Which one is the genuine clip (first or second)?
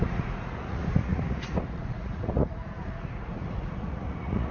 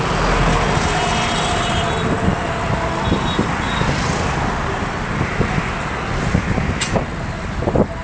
second